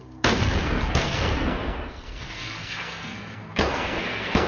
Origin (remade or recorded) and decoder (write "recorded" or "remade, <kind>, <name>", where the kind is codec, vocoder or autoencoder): remade, codec, SNAC